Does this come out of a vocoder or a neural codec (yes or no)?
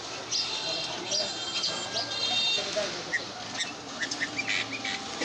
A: no